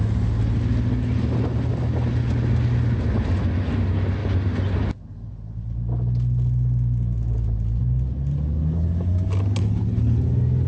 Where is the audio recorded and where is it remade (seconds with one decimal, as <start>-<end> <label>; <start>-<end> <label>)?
0.0-9.6 recorded; 9.6-10.2 remade; 10.2-10.7 recorded